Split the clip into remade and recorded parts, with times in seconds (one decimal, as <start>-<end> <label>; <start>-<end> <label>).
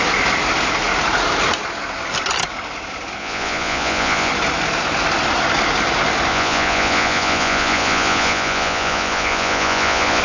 0.0-3.2 recorded; 3.2-4.3 remade; 4.3-6.3 recorded; 6.3-10.2 remade